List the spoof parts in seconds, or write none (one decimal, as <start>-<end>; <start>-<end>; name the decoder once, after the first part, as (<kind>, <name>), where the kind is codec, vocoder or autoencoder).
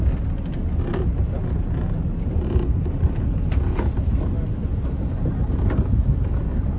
none